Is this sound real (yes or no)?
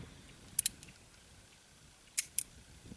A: yes